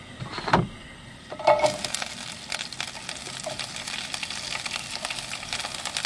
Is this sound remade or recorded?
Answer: recorded